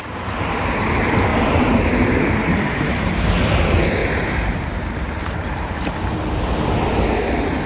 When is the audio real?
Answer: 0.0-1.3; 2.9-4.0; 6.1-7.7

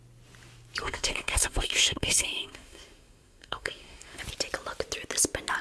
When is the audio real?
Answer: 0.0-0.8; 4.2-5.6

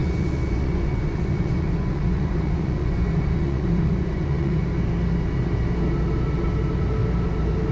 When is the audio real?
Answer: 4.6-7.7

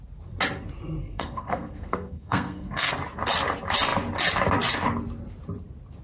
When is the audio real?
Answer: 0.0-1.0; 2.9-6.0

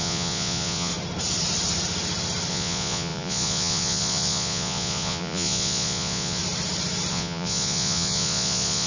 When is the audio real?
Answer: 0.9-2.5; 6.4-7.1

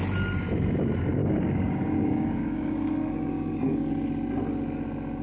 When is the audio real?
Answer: 0.0-1.2; 3.9-5.2